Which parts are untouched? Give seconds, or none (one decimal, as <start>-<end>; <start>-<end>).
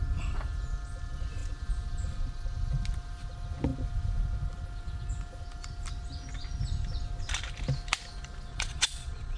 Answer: 0.0-8.5